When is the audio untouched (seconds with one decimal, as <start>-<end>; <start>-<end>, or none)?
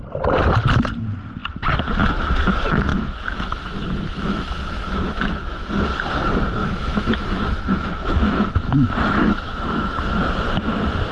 0.0-2.9; 5.7-6.6; 10.2-11.1